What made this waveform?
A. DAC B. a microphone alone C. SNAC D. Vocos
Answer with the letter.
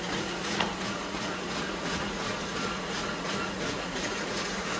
D